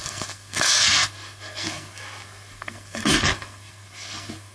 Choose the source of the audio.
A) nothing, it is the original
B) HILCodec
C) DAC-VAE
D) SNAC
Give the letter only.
D